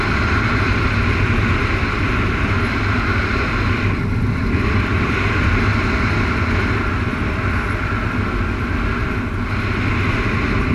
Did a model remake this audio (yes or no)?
no